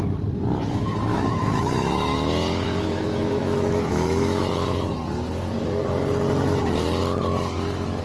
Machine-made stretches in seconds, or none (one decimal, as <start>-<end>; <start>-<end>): 1.1-4.9

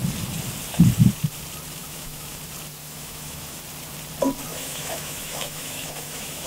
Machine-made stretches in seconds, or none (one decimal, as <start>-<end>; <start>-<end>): 1.8-2.4; 2.8-3.6; 4.5-6.5

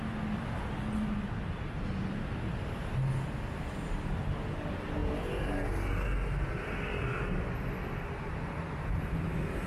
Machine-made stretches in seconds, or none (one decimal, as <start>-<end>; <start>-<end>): none